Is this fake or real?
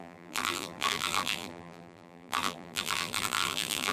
fake